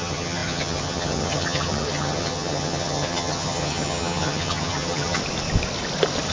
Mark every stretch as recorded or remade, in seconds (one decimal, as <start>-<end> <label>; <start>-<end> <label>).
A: 0.0-5.2 remade; 5.2-6.3 recorded